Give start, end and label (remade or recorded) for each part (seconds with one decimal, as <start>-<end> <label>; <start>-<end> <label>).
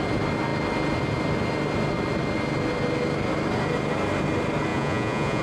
0.0-4.7 recorded; 4.7-5.4 remade